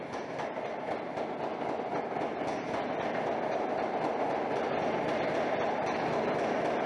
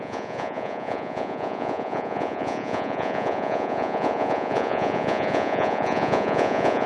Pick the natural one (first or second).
first